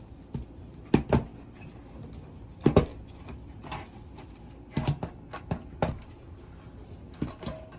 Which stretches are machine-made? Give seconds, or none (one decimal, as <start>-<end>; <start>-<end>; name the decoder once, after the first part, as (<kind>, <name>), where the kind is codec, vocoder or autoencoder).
none